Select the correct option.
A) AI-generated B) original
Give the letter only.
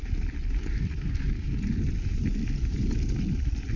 B